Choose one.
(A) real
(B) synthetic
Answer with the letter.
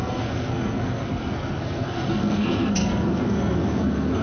B